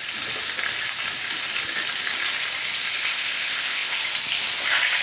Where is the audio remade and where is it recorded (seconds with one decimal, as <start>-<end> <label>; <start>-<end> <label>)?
0.0-3.0 recorded; 3.0-4.0 remade; 4.0-5.0 recorded